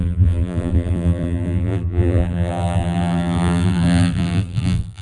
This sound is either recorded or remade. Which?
remade